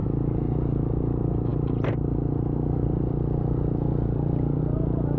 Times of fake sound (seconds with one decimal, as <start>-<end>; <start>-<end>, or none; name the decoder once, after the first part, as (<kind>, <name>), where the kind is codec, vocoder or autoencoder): none

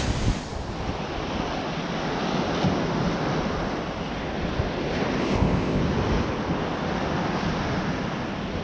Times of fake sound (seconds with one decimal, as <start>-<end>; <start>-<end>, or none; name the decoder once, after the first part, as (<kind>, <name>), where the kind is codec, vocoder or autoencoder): 5.2-5.8 (codec, ZipCodec)